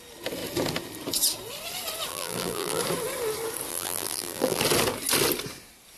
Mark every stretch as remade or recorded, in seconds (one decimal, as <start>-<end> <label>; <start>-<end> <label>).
0.0-2.1 recorded; 2.1-2.8 remade; 2.8-3.7 recorded; 3.7-4.6 remade; 4.6-6.0 recorded